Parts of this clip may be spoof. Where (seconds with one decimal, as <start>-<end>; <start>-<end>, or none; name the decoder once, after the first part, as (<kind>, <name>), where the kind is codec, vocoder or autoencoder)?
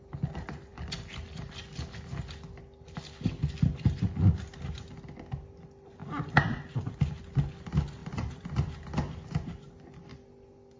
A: 6.0-7.2 (vocoder, BigVGAN v2); 8.0-9.7